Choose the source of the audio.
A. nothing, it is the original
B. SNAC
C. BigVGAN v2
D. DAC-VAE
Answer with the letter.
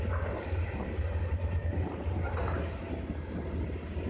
A